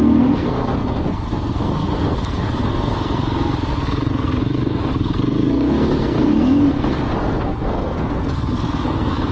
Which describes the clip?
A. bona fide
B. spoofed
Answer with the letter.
B